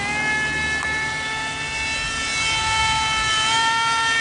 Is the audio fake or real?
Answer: real